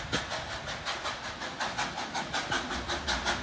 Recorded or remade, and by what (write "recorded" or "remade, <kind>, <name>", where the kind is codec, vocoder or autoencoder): recorded